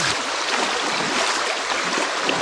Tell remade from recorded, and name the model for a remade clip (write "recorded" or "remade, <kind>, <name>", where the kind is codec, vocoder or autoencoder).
remade, vocoder, BigVGAN v2